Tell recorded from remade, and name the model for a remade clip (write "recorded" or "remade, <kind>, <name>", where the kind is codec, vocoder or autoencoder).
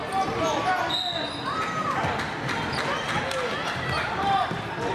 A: recorded